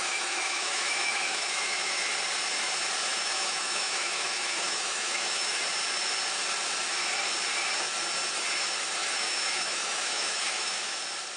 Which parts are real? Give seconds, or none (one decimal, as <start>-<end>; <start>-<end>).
2.1-3.1; 5.6-9.0; 11.0-11.4